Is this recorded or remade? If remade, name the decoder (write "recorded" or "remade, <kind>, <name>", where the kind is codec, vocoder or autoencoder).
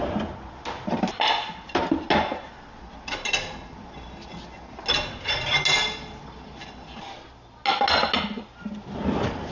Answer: recorded